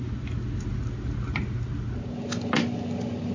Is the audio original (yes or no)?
yes